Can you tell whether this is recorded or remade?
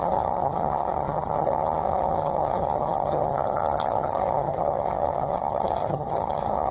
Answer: remade